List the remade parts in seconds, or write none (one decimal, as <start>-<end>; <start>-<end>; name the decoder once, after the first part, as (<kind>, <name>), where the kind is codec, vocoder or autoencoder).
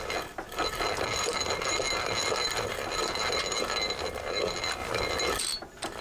none